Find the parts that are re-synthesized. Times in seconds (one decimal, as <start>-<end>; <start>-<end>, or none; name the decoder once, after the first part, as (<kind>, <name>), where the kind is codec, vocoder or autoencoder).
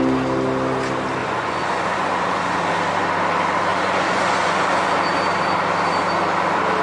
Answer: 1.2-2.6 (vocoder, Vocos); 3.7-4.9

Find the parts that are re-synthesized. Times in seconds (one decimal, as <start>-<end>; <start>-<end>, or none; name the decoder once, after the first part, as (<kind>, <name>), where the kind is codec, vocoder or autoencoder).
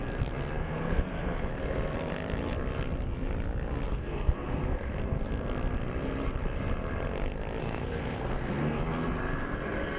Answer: 0.6-1.5 (codec, SNAC); 3.9-5.0; 7.6-8.8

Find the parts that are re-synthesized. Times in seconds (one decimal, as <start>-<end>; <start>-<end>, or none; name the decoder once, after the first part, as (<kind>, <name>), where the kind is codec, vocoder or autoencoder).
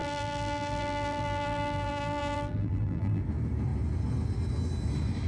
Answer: 0.0-3.2 (vocoder, BigVGAN v2)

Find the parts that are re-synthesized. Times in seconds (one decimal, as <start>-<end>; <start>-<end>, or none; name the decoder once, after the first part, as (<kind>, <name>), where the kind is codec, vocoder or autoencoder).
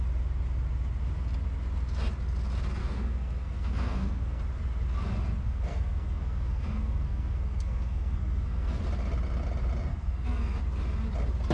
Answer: 2.8-4.4 (codec, SNAC); 5.4-8.8; 9.9-10.6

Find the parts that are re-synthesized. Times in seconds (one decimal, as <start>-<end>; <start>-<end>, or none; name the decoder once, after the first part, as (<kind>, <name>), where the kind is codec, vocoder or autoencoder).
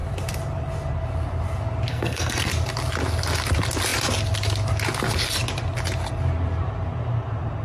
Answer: 1.9-2.5 (codec, SNAC)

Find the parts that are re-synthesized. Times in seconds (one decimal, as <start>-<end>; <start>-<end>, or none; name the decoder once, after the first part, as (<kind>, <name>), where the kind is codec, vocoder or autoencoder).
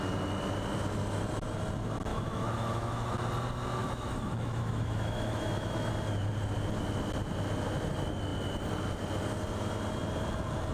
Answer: 2.1-2.9 (autoencoder, DAC-VAE); 3.8-5.9